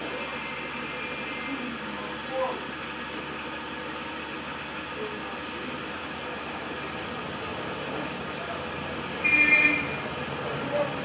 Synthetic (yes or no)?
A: no